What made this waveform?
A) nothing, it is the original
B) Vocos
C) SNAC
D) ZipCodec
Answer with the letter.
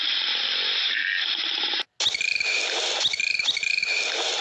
A